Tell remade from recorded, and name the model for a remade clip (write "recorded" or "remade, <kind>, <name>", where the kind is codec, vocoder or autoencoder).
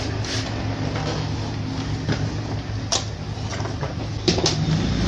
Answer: recorded